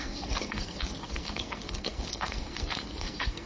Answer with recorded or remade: remade